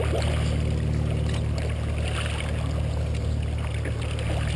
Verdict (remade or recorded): recorded